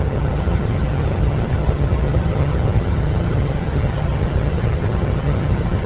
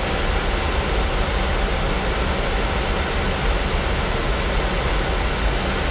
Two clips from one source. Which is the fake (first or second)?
first